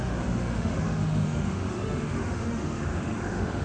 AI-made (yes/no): yes